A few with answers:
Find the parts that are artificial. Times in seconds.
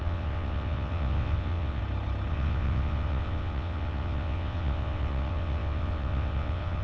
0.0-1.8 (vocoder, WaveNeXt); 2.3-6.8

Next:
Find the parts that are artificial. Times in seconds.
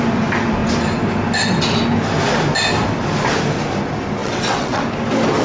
4.2-4.8 (vocoder, WaveNeXt)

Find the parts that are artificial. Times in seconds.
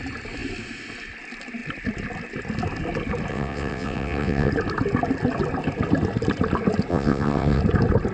3.3-4.5 (vocoder, WaveNeXt); 6.9-7.6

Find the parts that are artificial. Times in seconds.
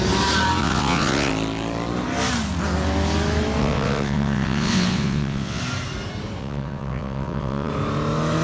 0.6-1.3 (vocoder, WaveNeXt); 3.6-5.6; 6.4-7.7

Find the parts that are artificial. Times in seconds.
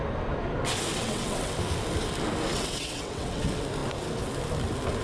0.9-1.6 (vocoder, WaveNeXt); 2.5-3.4